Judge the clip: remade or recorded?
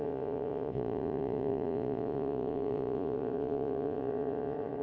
remade